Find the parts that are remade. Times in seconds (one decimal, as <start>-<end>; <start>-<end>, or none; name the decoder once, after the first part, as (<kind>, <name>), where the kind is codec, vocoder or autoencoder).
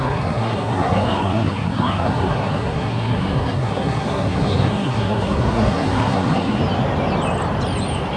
0.0-6.6 (codec, SNAC)